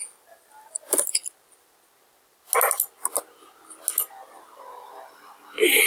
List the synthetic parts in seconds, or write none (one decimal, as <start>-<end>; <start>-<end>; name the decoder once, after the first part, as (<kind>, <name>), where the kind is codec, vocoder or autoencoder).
0.0-1.2 (vocoder, BigVGAN v2); 4.7-5.9